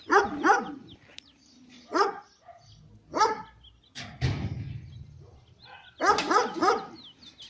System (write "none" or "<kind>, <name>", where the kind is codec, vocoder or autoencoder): none